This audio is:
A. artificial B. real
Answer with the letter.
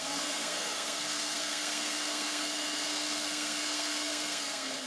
A